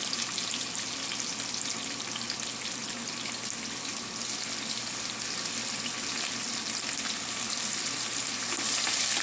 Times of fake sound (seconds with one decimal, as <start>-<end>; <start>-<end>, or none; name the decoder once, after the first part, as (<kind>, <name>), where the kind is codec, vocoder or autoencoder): none